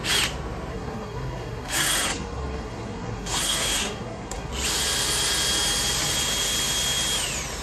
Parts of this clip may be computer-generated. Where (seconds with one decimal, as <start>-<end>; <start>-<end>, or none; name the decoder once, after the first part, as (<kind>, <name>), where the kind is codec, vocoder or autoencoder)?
0.7-4.5 (codec, SNAC)